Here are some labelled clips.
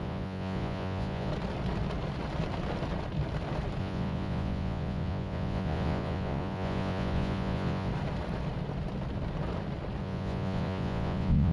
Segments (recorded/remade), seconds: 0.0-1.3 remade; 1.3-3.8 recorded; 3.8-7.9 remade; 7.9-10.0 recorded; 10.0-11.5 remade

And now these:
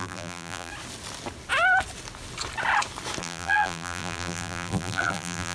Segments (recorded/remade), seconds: 0.0-0.7 remade; 0.7-3.2 recorded; 3.2-5.5 remade

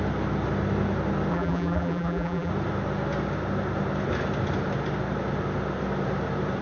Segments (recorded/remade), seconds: 0.0-1.3 recorded; 1.3-2.5 remade; 2.5-6.6 recorded